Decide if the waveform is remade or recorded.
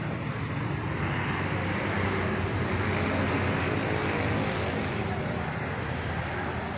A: recorded